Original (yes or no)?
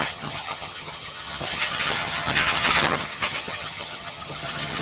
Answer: no